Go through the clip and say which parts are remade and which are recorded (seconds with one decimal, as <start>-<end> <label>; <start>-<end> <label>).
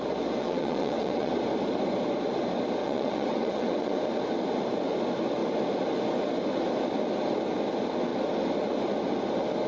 0.0-0.4 recorded; 0.4-1.3 remade; 1.3-2.8 recorded; 2.8-4.0 remade; 4.0-9.7 recorded